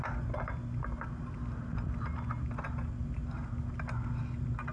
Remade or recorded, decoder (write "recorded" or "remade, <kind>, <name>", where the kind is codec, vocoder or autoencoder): recorded